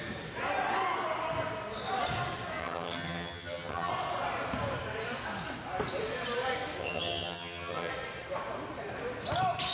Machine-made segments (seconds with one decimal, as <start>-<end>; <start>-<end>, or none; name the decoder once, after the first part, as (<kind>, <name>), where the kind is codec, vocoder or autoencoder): 2.6-3.9 (vocoder, HiFi-GAN); 6.8-7.9